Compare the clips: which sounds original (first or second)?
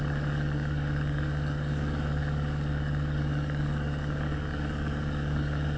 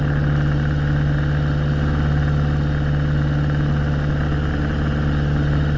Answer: second